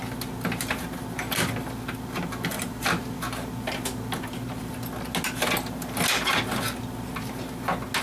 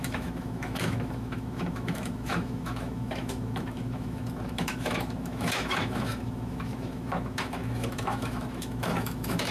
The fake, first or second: second